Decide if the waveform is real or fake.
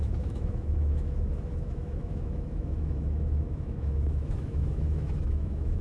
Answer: fake